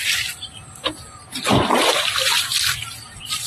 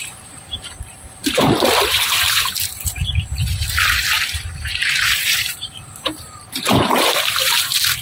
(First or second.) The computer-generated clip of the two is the second